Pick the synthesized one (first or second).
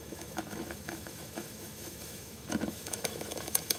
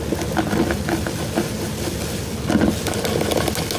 first